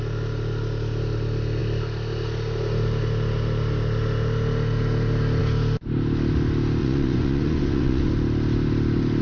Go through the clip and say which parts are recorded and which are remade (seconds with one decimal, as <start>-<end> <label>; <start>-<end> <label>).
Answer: 0.0-6.8 recorded; 6.8-8.1 remade; 8.1-9.2 recorded

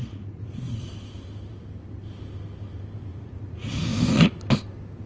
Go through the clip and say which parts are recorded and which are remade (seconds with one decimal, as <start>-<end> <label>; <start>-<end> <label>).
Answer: 0.0-0.8 remade; 0.8-3.1 recorded; 3.1-3.7 remade; 3.7-5.1 recorded

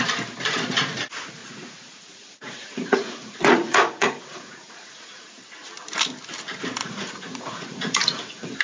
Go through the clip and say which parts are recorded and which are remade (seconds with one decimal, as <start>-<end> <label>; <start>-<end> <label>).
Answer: 0.0-1.4 recorded; 1.4-5.4 remade; 5.4-6.8 recorded; 6.8-8.6 remade

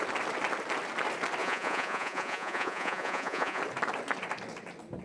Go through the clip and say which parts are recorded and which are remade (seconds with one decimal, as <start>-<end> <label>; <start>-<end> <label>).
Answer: 0.0-1.4 recorded; 1.4-3.6 remade; 3.6-5.0 recorded